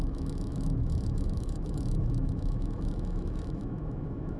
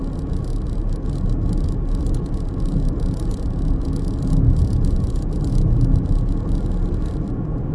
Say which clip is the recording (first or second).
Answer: second